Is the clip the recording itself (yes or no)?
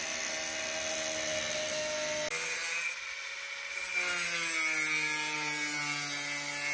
yes